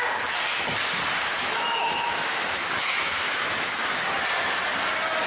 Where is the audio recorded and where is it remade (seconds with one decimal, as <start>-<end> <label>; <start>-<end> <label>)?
0.0-1.3 recorded; 1.3-4.1 remade; 4.1-5.3 recorded